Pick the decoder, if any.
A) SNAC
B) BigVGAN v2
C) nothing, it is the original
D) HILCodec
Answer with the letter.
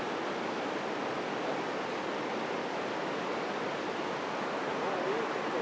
C